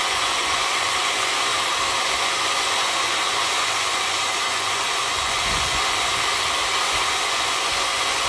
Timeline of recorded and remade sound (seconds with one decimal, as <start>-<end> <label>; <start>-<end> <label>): 0.0-1.5 remade; 1.5-2.0 recorded; 2.0-6.2 remade; 6.2-6.8 recorded; 6.8-8.3 remade